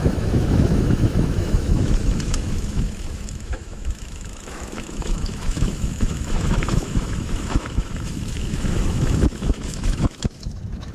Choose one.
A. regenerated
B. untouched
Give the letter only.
A